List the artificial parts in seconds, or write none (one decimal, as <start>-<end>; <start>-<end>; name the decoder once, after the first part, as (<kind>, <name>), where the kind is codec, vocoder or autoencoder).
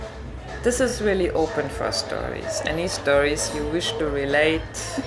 none